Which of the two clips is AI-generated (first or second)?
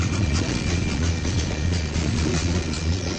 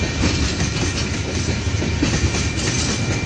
first